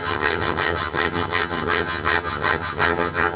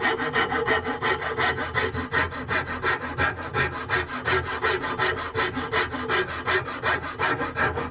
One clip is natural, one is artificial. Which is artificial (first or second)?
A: first